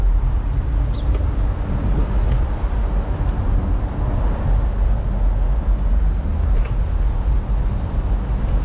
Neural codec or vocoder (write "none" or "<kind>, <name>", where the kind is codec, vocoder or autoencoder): none